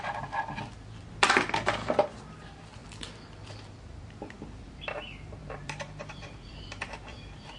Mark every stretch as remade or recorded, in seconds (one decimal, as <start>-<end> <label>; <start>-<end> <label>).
0.0-1.8 recorded; 1.8-2.4 remade; 2.4-2.8 recorded; 2.8-7.6 remade